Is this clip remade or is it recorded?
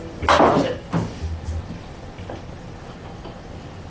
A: recorded